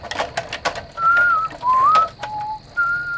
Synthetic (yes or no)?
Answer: no